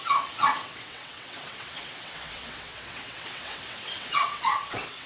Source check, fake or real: fake